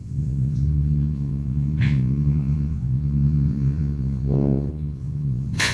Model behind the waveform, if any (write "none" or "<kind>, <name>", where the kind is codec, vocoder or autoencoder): vocoder, Vocos